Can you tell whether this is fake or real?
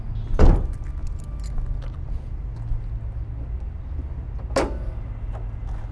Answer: real